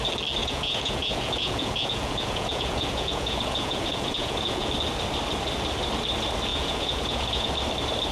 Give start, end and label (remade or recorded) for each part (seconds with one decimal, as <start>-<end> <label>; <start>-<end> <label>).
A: 0.0-0.4 recorded; 0.4-4.7 remade; 4.7-6.5 recorded; 6.5-7.5 remade; 7.5-8.1 recorded